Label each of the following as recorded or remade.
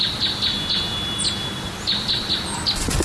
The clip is recorded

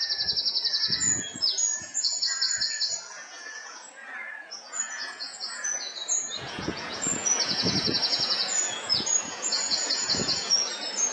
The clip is remade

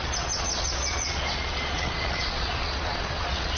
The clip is remade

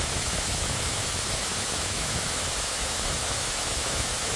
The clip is remade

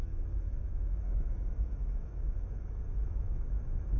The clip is remade